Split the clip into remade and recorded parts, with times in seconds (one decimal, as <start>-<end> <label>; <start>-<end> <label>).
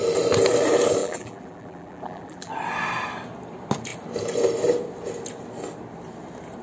0.0-1.0 recorded; 1.0-2.5 remade; 2.5-6.6 recorded